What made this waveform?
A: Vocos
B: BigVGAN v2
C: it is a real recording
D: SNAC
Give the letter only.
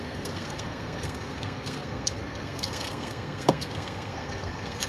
D